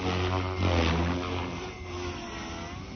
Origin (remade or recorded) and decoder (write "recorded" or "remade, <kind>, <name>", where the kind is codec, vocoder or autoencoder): recorded